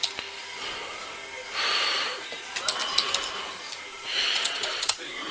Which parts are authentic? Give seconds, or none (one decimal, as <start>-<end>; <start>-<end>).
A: 0.0-3.9